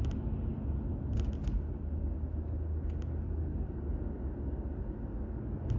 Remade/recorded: recorded